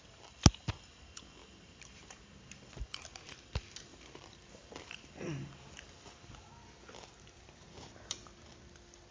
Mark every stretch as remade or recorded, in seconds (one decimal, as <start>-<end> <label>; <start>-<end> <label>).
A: 0.0-1.4 recorded; 1.4-2.7 remade; 2.7-3.9 recorded; 3.9-8.3 remade; 8.3-9.1 recorded